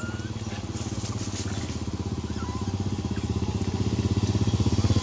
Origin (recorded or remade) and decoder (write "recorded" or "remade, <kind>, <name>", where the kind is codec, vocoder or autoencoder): recorded